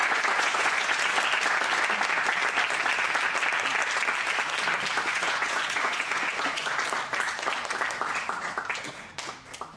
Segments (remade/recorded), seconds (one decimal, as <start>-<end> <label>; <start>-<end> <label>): 0.0-0.9 remade; 0.9-5.1 recorded; 5.1-6.7 remade; 6.7-9.8 recorded